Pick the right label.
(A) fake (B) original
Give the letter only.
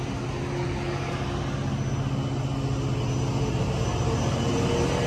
B